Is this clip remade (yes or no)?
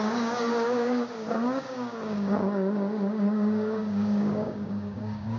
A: yes